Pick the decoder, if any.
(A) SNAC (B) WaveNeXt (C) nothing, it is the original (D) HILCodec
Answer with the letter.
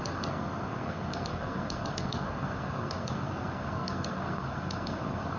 A